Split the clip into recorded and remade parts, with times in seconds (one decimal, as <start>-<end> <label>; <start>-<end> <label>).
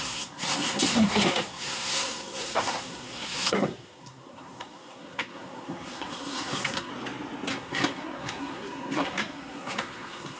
0.0-6.9 remade; 6.9-7.5 recorded; 7.5-10.4 remade